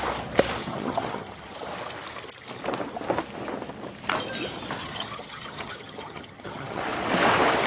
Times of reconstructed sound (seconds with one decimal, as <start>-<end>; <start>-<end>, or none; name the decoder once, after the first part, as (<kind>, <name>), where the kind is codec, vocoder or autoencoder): 0.6-1.7 (vocoder, HiFi-GAN); 4.8-6.8